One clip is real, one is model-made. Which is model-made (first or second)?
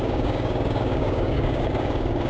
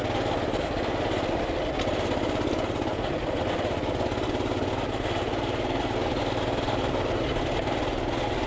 first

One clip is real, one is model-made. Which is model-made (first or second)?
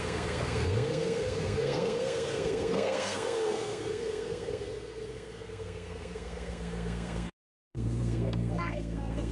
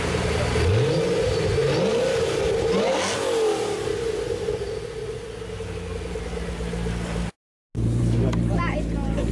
first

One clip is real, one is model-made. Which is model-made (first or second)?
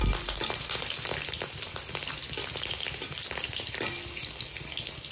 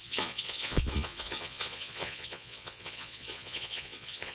second